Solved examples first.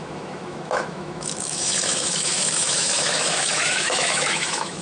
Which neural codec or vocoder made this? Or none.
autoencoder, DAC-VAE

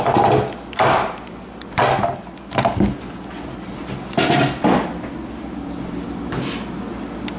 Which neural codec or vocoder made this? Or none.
none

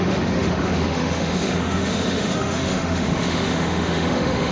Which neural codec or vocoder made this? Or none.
autoencoder, DAC-VAE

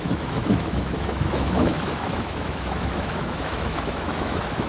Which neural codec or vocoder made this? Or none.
autoencoder, DAC-VAE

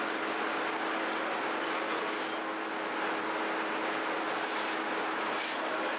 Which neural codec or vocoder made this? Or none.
none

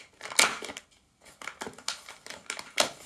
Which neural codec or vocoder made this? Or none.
none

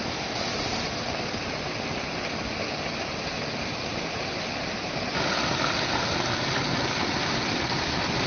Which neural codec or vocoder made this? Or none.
none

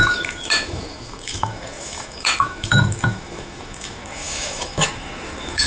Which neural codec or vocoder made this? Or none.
autoencoder, DAC-VAE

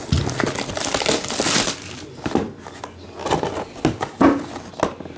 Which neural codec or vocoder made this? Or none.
none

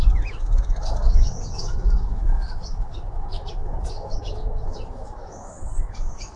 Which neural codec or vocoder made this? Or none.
autoencoder, DAC-VAE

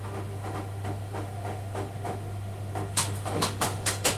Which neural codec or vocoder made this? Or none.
autoencoder, DAC-VAE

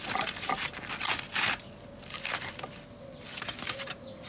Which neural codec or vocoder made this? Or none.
none